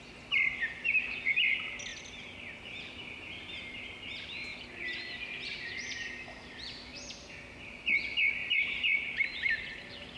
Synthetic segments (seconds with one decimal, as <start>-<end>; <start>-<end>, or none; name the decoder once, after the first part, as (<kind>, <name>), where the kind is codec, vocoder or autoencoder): 1.9-2.6 (vocoder, BigVGAN v2); 4.5-6.1; 6.9-7.4; 8.4-9.0